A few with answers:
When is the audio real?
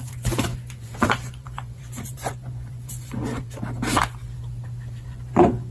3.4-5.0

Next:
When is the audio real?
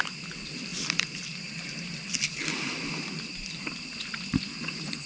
0.0-5.1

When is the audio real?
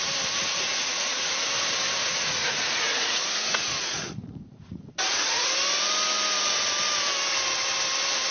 0.0-0.4; 1.3-2.0; 5.5-8.3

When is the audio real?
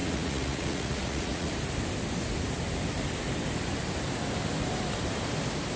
1.5-5.8